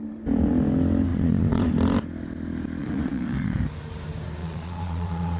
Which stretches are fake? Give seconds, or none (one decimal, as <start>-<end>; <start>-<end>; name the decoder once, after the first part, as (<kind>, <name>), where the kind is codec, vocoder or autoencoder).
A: 1.1-1.7 (vocoder, Vocos); 2.8-3.6; 4.4-5.4